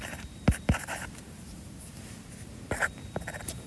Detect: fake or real fake